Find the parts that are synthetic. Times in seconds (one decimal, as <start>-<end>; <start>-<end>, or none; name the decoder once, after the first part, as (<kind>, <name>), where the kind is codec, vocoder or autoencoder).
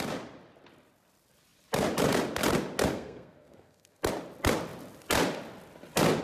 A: 2.9-4.0 (codec, SNAC)